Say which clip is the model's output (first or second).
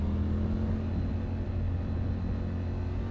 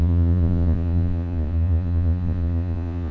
second